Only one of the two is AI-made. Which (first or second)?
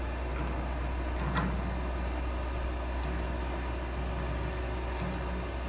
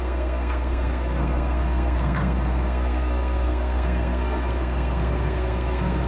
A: second